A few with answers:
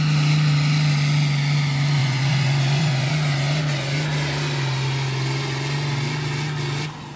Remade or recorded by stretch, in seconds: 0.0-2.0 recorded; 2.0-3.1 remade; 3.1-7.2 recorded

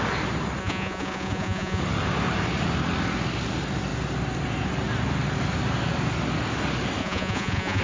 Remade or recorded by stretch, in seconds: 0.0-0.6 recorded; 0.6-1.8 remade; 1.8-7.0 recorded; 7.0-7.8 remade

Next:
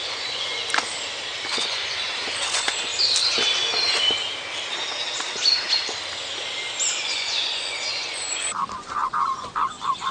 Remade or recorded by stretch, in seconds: 0.0-0.6 remade; 0.6-1.5 recorded; 1.5-2.9 remade; 2.9-7.0 recorded; 7.0-10.1 remade

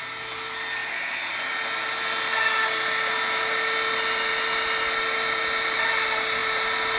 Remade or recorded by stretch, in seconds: 0.0-7.0 recorded